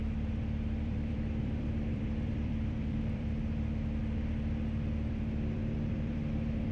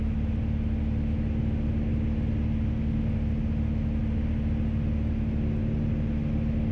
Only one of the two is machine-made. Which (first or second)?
first